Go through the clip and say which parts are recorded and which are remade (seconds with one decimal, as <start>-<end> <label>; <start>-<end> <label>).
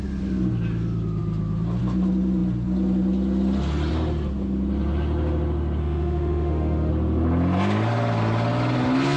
0.0-5.8 recorded; 5.8-6.9 remade; 6.9-9.2 recorded